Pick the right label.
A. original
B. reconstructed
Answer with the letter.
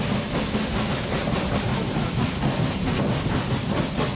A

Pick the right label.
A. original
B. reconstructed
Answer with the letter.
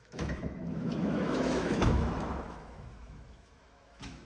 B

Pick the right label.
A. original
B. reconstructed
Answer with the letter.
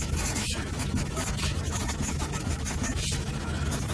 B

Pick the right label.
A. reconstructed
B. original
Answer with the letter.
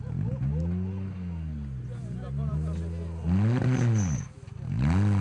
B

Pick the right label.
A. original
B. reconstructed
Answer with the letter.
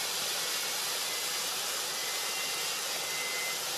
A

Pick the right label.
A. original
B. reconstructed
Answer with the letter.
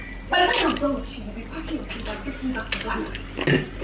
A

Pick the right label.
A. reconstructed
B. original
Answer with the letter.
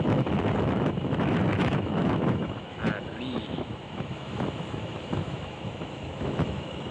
A